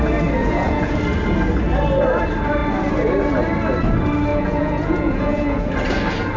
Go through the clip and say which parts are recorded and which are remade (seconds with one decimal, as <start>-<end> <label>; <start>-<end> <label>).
0.0-0.4 recorded; 0.4-1.0 remade; 1.0-4.3 recorded; 4.3-5.7 remade; 5.7-6.4 recorded